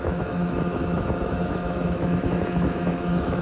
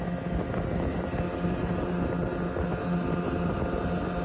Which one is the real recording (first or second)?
second